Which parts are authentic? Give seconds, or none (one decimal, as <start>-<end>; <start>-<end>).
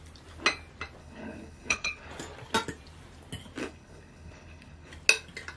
0.0-1.0; 2.1-3.6; 4.9-5.6